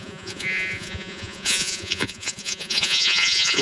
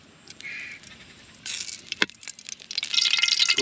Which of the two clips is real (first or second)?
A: second